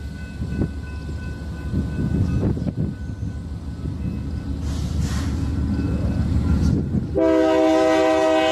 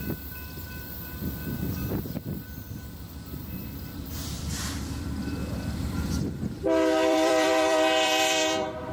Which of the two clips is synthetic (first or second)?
second